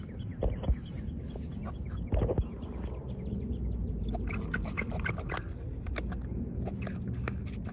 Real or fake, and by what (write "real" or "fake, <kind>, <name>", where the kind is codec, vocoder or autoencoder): real